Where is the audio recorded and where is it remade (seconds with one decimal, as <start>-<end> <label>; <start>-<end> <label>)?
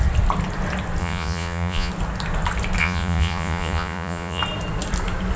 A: 0.0-1.0 recorded; 1.0-1.9 remade; 1.9-2.8 recorded; 2.8-4.4 remade; 4.4-5.4 recorded